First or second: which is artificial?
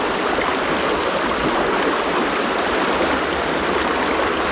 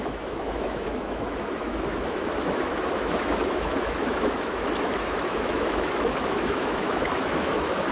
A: second